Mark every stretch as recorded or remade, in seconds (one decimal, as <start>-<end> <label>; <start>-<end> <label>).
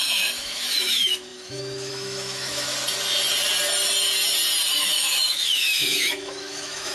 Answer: 0.0-2.7 remade; 2.7-4.8 recorded; 4.8-6.9 remade